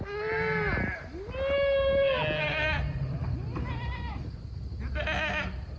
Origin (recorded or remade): recorded